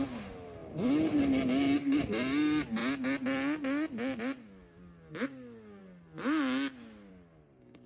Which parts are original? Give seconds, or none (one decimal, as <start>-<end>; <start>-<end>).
0.0-7.9